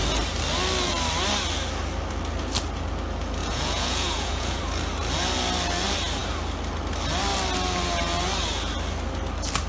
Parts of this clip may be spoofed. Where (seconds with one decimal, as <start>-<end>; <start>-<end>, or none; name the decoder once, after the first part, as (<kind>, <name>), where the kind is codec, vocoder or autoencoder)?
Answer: 3.4-4.6 (vocoder, Vocos)